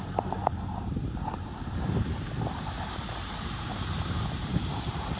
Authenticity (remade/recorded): remade